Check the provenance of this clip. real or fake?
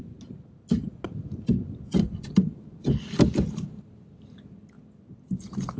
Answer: real